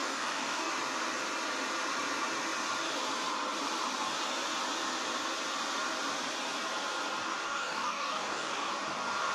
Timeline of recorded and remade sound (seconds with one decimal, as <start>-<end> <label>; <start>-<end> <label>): 0.0-0.7 remade; 0.7-7.4 recorded; 7.4-8.7 remade; 8.7-9.3 recorded